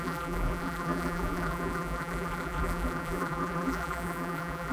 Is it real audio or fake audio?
fake